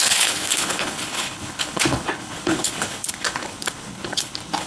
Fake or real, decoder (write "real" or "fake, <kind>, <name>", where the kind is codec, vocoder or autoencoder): fake, codec, HILCodec